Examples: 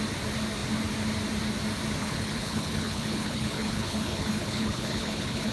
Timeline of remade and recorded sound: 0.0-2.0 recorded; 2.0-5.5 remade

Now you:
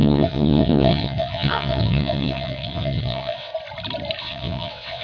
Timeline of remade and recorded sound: 0.0-3.5 remade; 3.5-4.2 recorded; 4.2-5.0 remade